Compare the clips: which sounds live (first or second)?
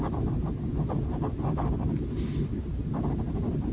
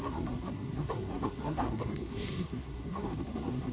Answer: first